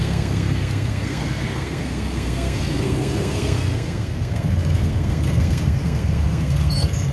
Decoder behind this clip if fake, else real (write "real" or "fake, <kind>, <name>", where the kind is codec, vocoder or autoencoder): fake, codec, SNAC